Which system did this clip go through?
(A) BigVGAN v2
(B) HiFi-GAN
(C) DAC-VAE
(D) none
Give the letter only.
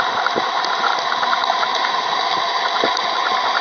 D